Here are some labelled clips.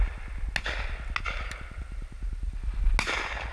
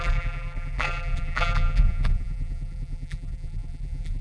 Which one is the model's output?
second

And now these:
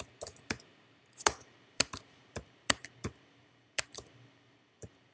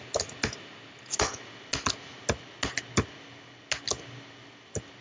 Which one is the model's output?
first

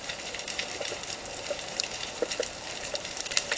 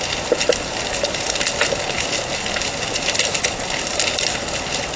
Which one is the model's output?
first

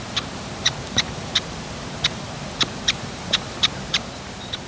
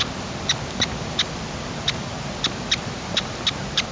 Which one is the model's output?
first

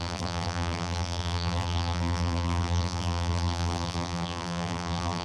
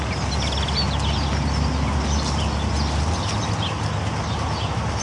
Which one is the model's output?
first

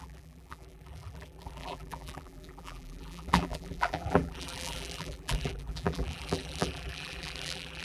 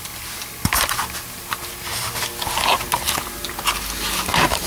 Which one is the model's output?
first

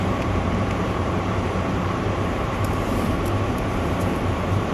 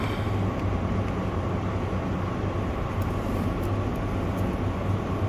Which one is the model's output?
first